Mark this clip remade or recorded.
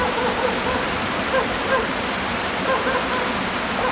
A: recorded